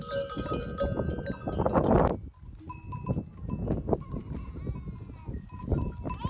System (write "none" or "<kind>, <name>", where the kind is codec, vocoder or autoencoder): none